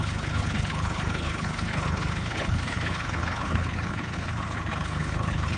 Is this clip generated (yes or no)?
yes